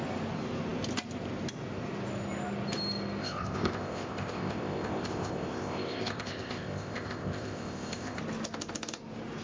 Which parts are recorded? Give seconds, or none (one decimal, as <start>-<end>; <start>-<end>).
0.0-3.2; 8.2-9.4